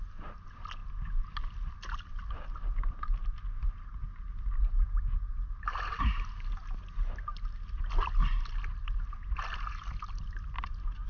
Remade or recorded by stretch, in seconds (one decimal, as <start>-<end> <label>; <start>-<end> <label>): 0.0-11.1 recorded